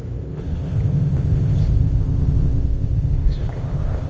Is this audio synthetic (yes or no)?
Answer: yes